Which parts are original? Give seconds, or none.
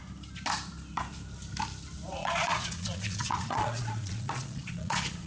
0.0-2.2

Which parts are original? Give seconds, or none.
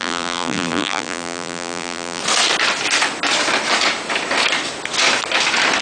2.2-5.8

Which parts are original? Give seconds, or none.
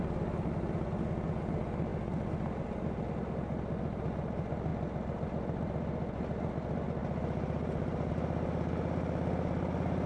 0.0-7.0; 8.1-10.1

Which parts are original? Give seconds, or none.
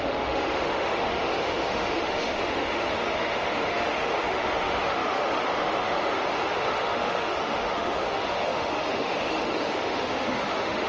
none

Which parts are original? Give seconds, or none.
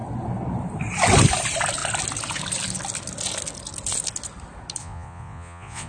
0.0-4.8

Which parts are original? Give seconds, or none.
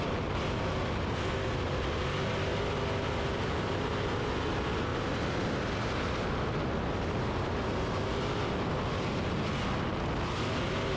0.0-3.4; 3.9-4.9; 5.4-11.0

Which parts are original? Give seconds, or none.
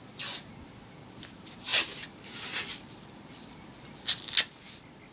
0.0-5.1